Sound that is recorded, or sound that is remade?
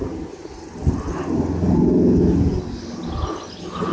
recorded